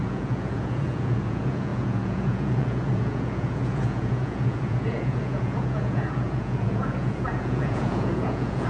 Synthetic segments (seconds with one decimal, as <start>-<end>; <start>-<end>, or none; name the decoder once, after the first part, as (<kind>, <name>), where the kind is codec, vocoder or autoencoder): 0.0-8.7 (vocoder, Vocos)